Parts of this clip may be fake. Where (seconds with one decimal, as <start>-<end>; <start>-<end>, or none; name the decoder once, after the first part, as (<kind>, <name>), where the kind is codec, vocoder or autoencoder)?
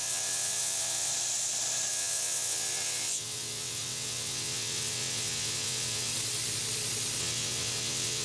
0.0-1.1 (vocoder, WaveNeXt); 1.9-6.1; 7.2-8.2